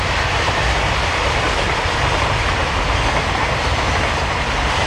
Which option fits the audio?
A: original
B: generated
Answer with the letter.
A